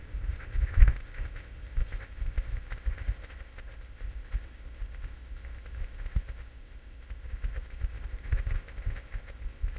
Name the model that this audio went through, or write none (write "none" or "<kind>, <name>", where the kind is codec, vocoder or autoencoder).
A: codec, ZipCodec